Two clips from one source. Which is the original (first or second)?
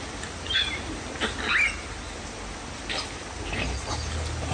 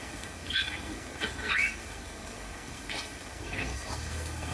first